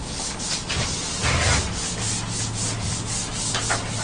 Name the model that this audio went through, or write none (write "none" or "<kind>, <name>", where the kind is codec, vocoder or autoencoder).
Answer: none